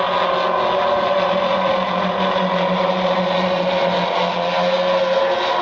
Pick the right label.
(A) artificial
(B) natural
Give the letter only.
B